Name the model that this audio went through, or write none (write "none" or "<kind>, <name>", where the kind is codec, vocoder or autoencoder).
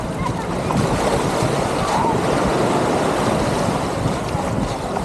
none